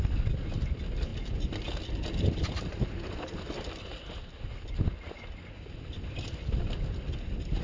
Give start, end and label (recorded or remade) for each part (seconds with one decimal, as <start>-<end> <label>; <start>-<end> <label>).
0.0-7.6 recorded